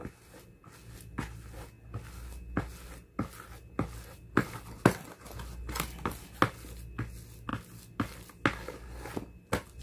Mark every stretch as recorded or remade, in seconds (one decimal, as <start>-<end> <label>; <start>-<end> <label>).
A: 0.0-9.8 recorded